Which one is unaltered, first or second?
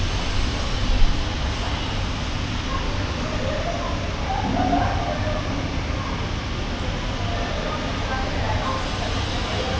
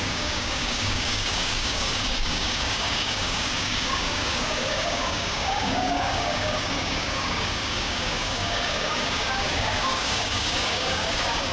first